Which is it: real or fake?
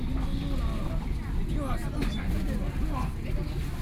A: real